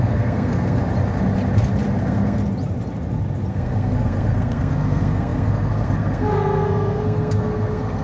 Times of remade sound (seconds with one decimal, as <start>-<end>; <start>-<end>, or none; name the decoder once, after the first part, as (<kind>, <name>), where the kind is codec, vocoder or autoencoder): 0.0-0.8 (codec, SNAC); 2.0-2.4; 3.5-8.0